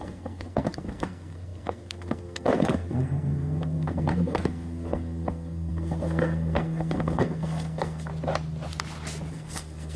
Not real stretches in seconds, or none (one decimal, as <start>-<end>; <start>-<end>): 0.0-8.1; 9.3-10.0